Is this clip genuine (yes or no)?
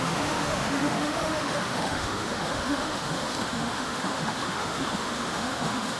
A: no